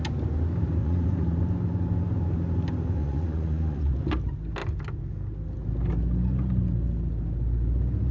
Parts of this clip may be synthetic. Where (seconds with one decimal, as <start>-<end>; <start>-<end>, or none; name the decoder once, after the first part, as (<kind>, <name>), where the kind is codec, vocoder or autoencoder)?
0.8-1.4 (vocoder, Vocos); 3.0-3.9